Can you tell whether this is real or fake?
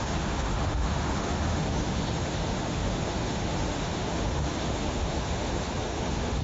fake